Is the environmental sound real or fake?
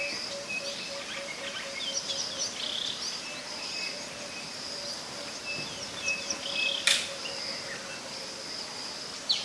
real